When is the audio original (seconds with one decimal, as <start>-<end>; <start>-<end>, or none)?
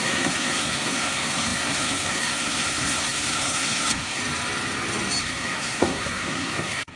4.2-5.2